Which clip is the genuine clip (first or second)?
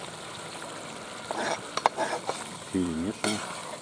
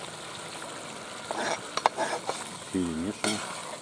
second